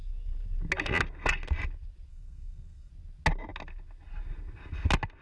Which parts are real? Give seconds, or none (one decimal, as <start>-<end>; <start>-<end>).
0.0-2.1; 2.9-5.2